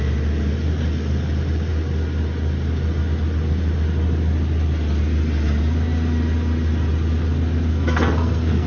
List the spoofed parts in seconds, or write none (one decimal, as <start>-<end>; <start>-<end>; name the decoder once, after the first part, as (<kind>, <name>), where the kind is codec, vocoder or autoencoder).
7.7-8.7 (codec, SNAC)